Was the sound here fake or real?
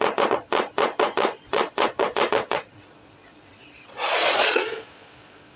fake